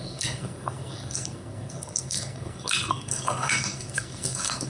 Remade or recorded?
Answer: remade